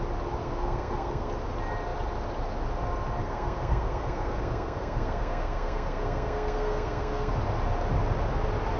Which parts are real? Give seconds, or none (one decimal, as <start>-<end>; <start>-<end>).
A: 0.0-0.4; 1.3-3.2; 7.3-8.8